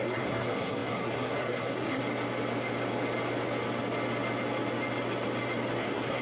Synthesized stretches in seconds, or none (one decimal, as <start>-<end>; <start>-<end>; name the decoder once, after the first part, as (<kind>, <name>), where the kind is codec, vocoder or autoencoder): 0.0-2.0 (codec, SNAC); 5.7-6.2